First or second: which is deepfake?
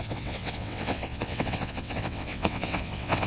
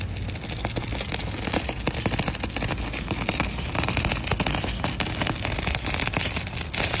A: first